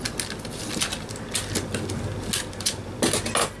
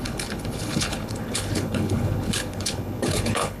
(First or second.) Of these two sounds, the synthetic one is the second